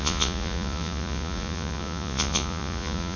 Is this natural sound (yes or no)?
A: no